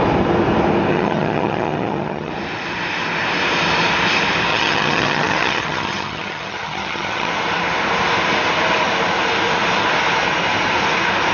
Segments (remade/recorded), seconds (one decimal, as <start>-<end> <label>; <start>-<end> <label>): 0.0-0.9 recorded; 0.9-2.3 remade; 2.3-4.5 recorded; 4.5-7.3 remade; 7.3-11.3 recorded